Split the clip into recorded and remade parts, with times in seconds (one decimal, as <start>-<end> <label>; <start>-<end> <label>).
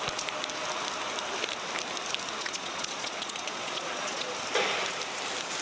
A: 0.0-2.4 recorded; 2.4-4.3 remade; 4.3-5.6 recorded